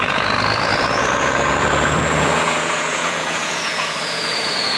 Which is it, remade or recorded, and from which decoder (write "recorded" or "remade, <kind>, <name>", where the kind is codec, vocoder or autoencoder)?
remade, vocoder, Vocos